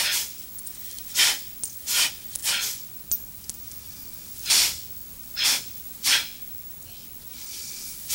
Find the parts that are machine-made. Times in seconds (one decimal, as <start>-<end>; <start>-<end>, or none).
0.0-2.4; 3.4-8.1